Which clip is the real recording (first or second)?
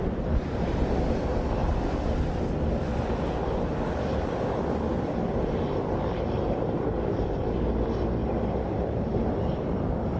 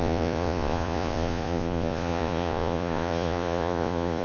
first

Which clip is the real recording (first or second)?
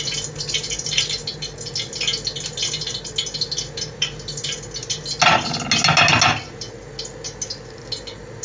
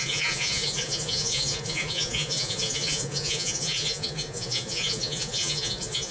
first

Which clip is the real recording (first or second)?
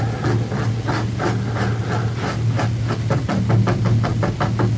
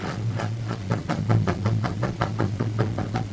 first